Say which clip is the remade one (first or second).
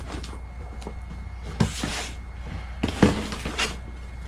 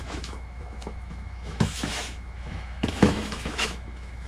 second